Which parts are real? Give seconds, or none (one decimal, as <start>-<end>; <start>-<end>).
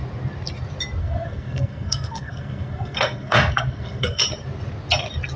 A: 0.0-1.0; 4.2-5.4